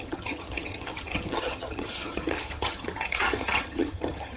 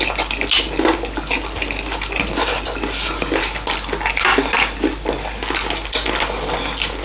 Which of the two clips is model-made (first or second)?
first